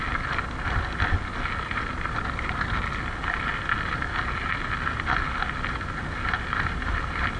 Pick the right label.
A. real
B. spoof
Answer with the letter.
A